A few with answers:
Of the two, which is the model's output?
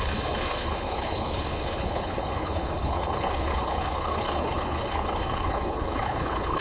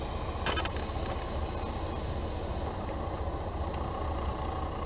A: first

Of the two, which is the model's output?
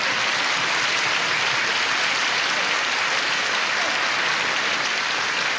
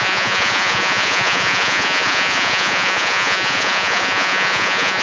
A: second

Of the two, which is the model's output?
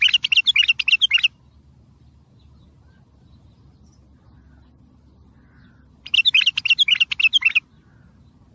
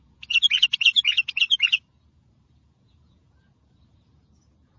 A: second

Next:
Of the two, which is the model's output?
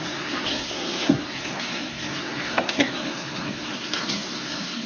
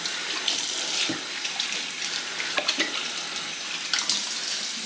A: first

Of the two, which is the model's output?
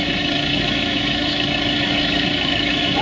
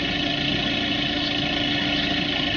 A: first